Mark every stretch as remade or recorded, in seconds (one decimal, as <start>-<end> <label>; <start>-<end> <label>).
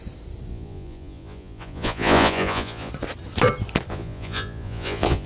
0.0-0.5 recorded; 0.5-2.9 remade; 2.9-3.9 recorded; 3.9-5.3 remade